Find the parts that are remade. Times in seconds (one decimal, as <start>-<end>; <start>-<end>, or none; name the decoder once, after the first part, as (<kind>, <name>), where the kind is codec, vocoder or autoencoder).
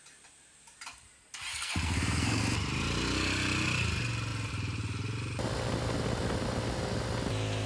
1.5-2.4 (codec, SNAC)